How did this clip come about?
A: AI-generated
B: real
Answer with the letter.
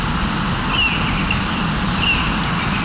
B